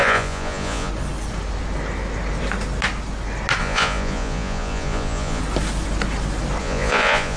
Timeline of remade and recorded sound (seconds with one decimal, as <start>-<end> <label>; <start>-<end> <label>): 0.0-0.9 remade; 0.9-3.6 recorded; 3.6-5.4 remade; 5.4-6.6 recorded; 6.6-7.4 remade